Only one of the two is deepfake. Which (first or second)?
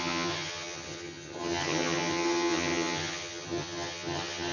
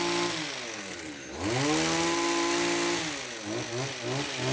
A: first